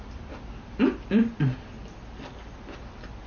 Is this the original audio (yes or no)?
yes